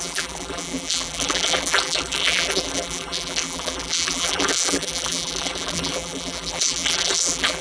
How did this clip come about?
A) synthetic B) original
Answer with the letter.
A